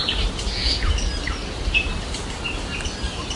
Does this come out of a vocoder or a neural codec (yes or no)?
no